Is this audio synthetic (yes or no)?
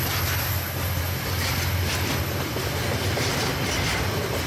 no